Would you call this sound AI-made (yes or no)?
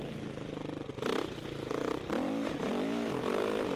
no